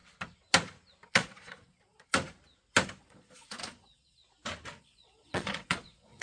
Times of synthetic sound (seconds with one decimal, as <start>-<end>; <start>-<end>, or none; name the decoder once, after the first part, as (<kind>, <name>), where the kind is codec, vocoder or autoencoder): 1.1-2.1 (vocoder, Vocos); 3.0-4.2; 4.8-6.2